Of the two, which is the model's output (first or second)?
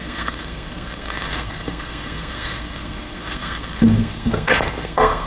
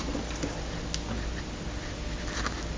first